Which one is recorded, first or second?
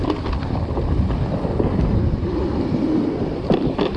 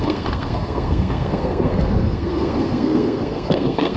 first